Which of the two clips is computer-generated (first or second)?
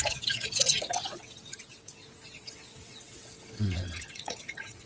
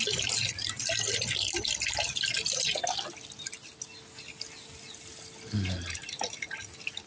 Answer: first